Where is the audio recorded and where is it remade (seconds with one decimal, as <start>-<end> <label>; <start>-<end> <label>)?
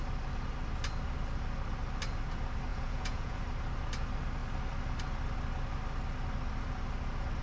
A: 0.0-2.7 recorded; 2.7-3.4 remade; 3.4-7.4 recorded